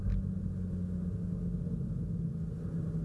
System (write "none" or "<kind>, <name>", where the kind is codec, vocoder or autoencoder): none